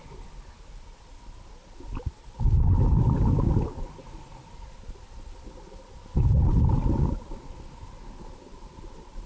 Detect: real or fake real